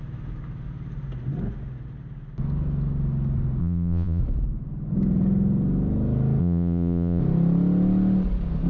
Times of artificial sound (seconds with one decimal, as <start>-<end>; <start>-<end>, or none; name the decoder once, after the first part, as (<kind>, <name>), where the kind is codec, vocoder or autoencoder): 3.6-4.2 (vocoder, Vocos); 6.4-7.2